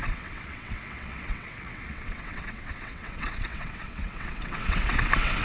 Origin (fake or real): fake